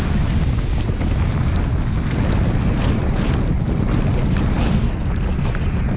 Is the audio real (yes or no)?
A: yes